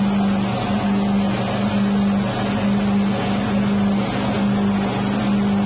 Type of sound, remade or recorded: recorded